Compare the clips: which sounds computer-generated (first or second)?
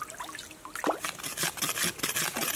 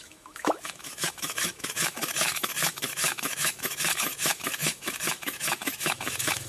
second